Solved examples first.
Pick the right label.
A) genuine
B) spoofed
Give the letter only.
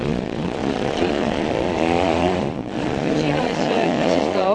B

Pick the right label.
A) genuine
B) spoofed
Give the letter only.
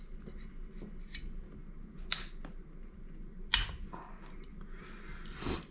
A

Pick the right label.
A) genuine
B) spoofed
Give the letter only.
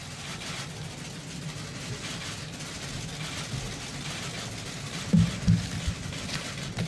A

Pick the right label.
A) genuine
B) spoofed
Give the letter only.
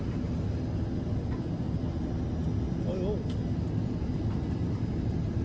A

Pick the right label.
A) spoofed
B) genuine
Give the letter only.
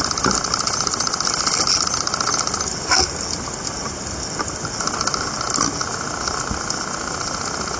B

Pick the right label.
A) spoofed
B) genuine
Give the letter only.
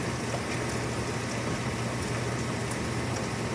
B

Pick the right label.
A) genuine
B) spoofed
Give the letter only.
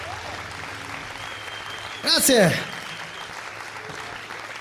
A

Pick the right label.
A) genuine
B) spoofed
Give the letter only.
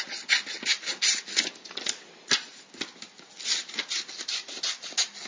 A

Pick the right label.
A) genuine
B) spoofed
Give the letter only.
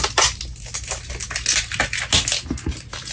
A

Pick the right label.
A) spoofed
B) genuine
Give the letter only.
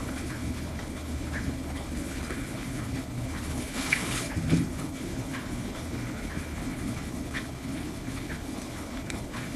A